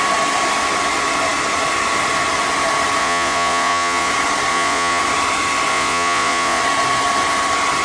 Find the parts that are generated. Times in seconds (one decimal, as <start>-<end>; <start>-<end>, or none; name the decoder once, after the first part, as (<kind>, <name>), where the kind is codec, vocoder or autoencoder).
3.0-4.1 (vocoder, Vocos); 4.5-5.0; 5.7-6.6